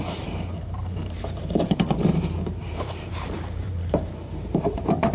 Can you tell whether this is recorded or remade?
remade